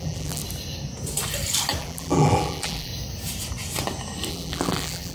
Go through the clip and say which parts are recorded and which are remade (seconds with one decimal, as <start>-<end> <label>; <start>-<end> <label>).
0.0-0.4 remade; 0.4-1.8 recorded; 1.8-2.9 remade; 2.9-4.3 recorded; 4.3-5.1 remade